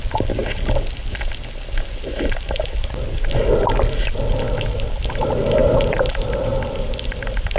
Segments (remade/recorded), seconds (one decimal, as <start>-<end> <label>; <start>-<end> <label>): 0.0-5.6 recorded; 5.6-6.6 remade; 6.6-7.6 recorded